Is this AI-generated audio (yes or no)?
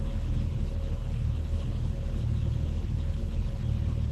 yes